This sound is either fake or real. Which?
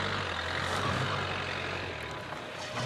real